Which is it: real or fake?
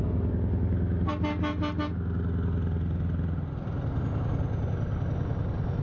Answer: real